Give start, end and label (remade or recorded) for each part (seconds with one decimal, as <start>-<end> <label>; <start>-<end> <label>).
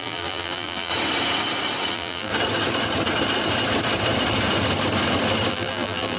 0.0-0.9 remade; 0.9-1.9 recorded; 1.9-2.3 remade; 2.3-5.5 recorded; 5.5-6.2 remade